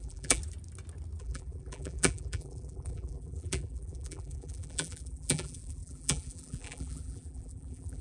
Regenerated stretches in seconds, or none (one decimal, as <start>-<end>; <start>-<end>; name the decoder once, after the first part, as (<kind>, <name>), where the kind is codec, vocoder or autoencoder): 0.0-0.4 (vocoder, BigVGAN v2); 1.2-8.0